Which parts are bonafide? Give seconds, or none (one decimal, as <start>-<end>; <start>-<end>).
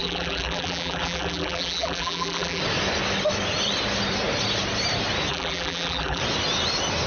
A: 2.6-5.3; 6.2-7.1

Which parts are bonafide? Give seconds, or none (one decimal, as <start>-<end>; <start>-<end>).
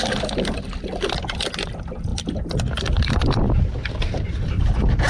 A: 0.0-5.1